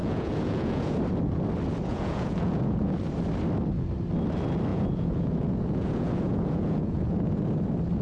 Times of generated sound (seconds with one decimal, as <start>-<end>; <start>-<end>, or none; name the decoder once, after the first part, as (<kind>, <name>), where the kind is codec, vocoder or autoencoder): 0.0-1.0 (vocoder, Vocos); 1.9-3.0; 4.7-7.4